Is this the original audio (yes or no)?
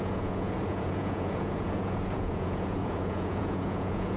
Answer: no